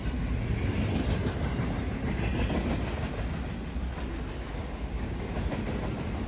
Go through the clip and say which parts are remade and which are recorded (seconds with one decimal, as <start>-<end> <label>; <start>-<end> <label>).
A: 0.0-4.6 recorded; 4.6-5.6 remade; 5.6-6.3 recorded